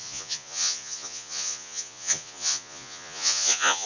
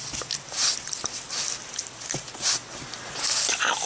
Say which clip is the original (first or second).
second